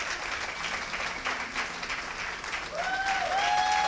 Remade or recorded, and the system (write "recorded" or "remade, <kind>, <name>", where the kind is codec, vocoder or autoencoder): recorded